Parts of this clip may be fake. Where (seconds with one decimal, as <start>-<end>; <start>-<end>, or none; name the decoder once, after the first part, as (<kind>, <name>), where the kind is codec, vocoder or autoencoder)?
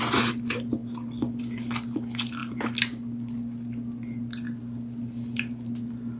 none